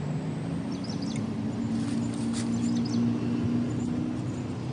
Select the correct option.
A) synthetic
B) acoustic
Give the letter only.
B